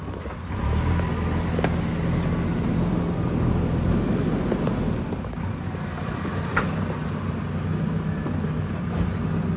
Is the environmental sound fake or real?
real